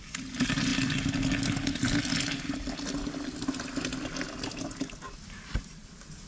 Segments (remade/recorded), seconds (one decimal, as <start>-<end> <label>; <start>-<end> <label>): 0.0-6.3 recorded